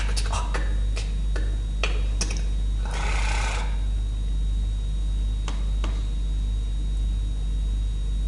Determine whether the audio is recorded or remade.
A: recorded